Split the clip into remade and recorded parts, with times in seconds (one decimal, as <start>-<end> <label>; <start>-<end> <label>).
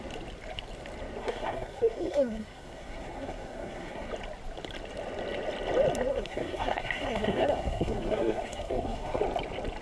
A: 0.0-1.2 recorded; 1.2-4.1 remade; 4.1-6.1 recorded; 6.1-9.2 remade; 9.2-9.8 recorded